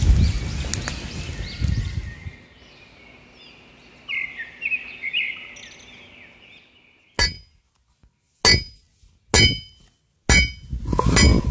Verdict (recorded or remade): recorded